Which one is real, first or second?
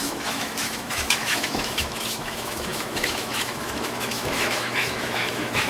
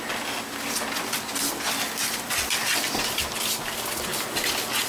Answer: second